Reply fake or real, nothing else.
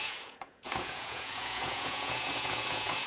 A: fake